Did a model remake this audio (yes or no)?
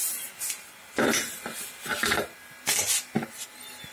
no